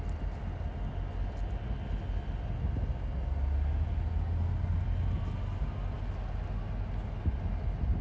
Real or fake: real